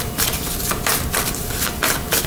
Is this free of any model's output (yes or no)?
yes